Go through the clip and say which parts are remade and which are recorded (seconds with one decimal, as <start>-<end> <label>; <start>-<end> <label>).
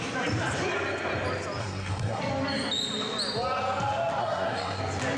0.0-1.6 recorded; 1.6-2.2 remade; 2.2-4.2 recorded; 4.2-4.8 remade; 4.8-5.2 recorded